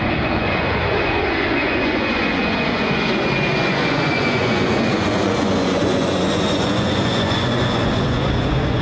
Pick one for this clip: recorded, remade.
remade